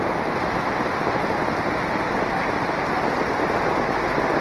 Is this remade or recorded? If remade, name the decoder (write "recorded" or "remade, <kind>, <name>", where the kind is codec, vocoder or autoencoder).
recorded